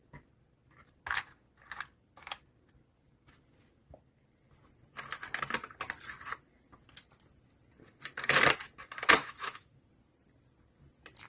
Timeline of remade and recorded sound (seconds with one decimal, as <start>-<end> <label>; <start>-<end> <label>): 0.0-9.2 recorded; 9.2-9.9 remade; 9.9-11.3 recorded